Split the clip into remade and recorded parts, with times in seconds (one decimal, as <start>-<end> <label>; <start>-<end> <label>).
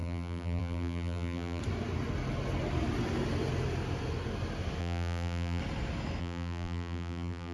0.0-1.6 remade; 1.6-4.8 recorded; 4.8-5.6 remade; 5.6-6.2 recorded; 6.2-7.5 remade